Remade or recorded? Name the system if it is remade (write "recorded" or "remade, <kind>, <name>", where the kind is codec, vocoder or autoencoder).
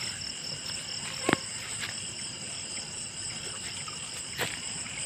recorded